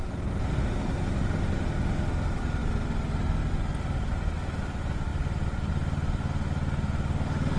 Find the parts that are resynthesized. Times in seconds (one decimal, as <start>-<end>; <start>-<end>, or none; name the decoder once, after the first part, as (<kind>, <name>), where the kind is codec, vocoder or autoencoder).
none